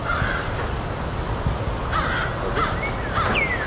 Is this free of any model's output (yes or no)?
yes